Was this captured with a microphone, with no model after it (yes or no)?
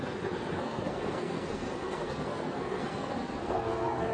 no